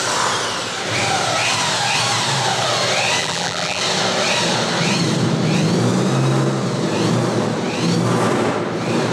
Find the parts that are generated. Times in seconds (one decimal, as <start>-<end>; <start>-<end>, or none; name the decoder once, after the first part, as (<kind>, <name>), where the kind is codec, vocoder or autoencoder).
3.2-3.8 (vocoder, BigVGAN v2)